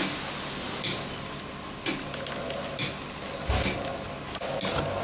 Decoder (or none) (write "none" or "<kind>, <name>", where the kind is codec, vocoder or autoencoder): none